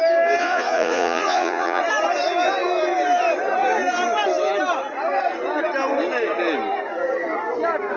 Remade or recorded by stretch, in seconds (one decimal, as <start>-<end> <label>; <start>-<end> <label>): 0.0-0.4 recorded; 0.4-1.8 remade; 1.8-8.0 recorded